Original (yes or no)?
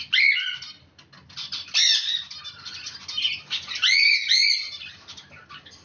no